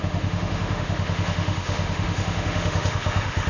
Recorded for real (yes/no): no